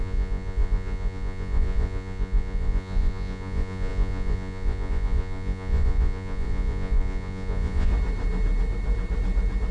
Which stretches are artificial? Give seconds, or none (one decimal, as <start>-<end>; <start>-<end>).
0.0-7.9